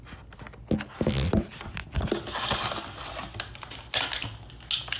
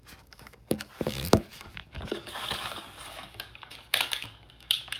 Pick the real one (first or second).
first